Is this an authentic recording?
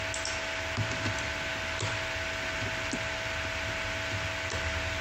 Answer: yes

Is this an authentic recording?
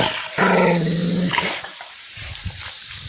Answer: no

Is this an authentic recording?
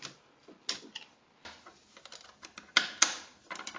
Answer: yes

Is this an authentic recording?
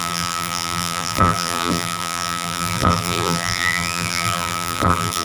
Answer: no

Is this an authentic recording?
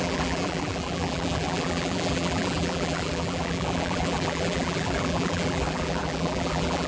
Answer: no